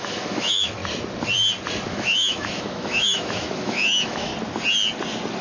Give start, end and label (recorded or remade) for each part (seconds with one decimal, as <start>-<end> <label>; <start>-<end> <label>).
0.0-0.8 remade; 0.8-1.9 recorded; 1.9-4.3 remade; 4.3-5.4 recorded